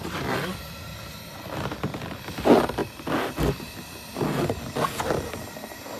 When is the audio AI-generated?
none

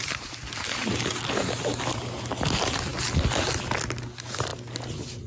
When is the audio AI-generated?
0.0-0.8 (vocoder, BigVGAN v2); 2.9-3.5

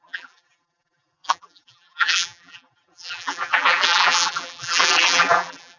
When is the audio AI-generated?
0.0-5.8 (vocoder, BigVGAN v2)

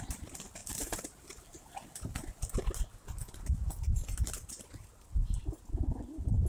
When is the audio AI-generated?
none

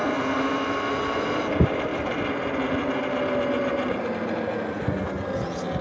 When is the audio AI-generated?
none

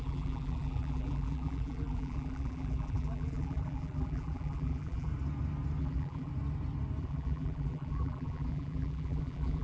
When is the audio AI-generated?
0.0-5.1 (vocoder, BigVGAN v2); 5.8-6.3; 7.0-9.6